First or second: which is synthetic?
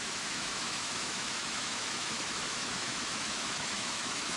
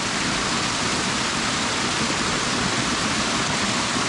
first